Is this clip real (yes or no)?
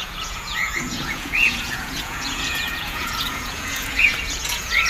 no